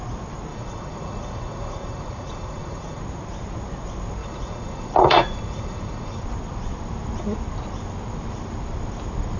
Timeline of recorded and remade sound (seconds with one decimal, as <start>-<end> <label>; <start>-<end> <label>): 0.0-0.5 recorded; 0.5-3.0 remade; 3.0-4.2 recorded; 4.2-6.2 remade; 6.2-9.4 recorded